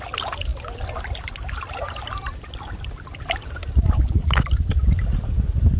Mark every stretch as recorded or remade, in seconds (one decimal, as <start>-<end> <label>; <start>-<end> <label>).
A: 0.0-5.8 recorded